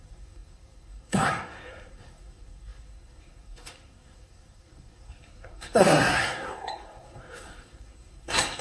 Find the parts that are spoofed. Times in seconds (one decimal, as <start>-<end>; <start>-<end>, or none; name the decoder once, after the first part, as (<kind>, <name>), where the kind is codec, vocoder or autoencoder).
0.0-8.6 (codec, SNAC)